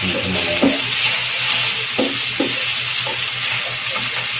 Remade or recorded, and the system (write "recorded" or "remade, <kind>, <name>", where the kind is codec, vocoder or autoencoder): recorded